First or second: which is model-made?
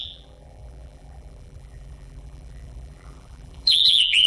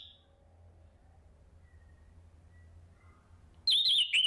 first